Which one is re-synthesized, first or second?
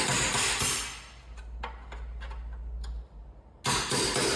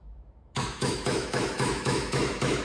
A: second